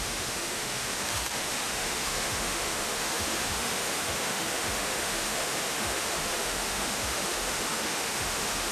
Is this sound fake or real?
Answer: fake